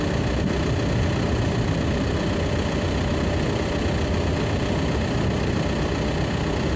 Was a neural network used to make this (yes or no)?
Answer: no